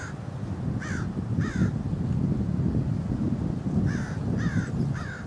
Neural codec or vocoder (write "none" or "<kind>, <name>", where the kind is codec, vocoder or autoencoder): none